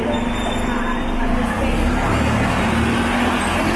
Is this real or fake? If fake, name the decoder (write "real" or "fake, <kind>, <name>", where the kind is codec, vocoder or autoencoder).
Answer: real